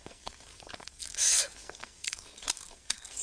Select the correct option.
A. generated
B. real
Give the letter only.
A